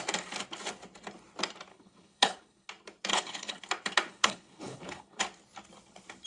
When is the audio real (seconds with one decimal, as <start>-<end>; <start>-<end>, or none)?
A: 0.0-1.7; 2.7-3.1; 3.6-4.1; 5.2-6.3

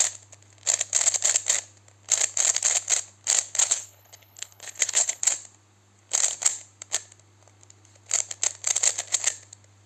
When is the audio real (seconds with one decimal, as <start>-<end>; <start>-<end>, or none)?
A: 0.0-3.6; 5.2-9.9

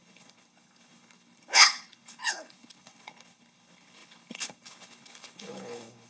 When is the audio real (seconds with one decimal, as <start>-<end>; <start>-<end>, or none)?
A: none

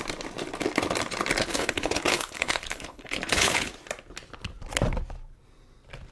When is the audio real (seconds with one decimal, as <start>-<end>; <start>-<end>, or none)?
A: 0.0-1.4; 3.7-6.1